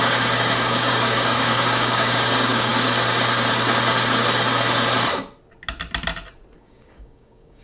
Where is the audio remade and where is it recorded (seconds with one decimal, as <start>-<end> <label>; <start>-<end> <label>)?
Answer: 0.0-2.7 remade; 2.7-6.6 recorded; 6.6-7.6 remade